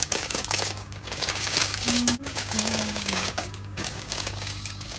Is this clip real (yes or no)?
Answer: no